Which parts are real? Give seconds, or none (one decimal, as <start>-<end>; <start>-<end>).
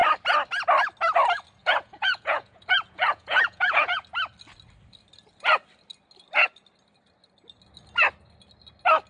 0.0-1.6; 4.0-9.1